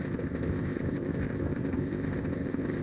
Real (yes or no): no